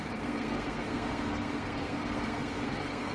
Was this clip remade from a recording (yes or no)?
yes